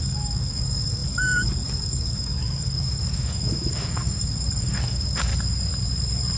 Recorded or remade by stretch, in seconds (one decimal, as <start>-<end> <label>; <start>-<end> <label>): 0.0-5.3 remade; 5.3-6.4 recorded